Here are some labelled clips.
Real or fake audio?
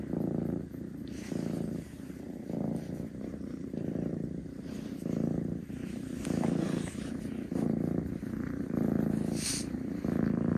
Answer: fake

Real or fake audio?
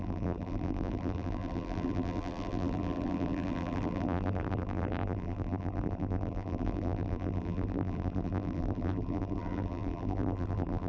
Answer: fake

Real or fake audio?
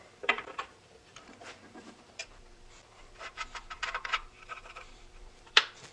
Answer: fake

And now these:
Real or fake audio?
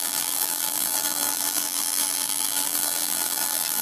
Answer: fake